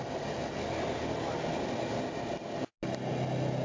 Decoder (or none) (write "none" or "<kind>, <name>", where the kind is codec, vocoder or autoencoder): none